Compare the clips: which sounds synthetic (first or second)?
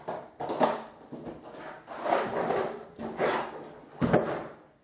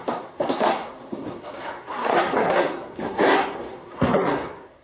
second